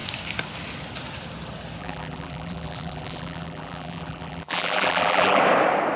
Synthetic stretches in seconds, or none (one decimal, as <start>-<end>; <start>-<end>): 1.8-5.4